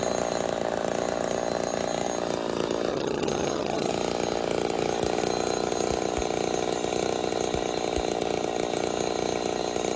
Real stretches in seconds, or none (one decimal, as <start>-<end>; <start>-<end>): 0.0-2.9; 3.9-10.0